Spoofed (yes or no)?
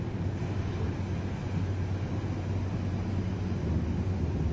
no